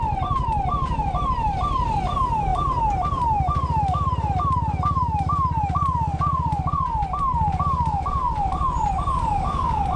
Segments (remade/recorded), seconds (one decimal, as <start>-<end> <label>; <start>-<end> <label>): 0.0-10.0 recorded